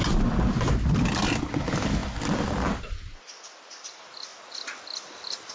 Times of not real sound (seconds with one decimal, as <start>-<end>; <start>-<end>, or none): none